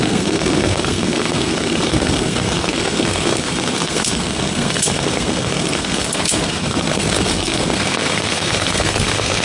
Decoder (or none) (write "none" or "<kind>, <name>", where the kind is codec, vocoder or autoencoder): codec, SNAC